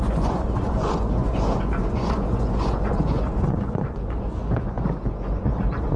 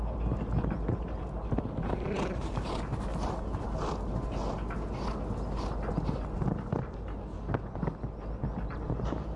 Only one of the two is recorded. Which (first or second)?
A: second